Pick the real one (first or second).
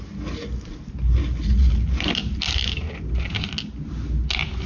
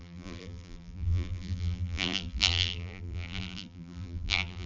first